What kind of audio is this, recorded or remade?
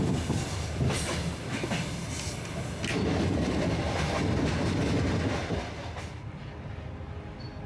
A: recorded